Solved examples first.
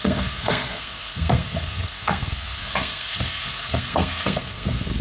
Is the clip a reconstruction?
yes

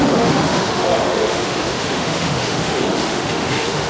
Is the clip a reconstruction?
yes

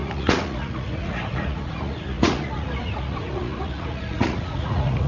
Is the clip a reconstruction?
yes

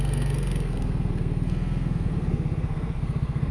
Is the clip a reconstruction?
yes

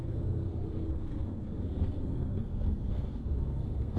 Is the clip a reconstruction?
yes